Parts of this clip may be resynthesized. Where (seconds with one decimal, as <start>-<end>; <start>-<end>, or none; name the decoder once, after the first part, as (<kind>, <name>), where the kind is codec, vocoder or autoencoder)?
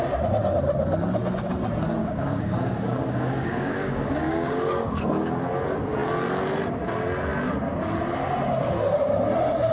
2.0-5.3 (codec, DAC)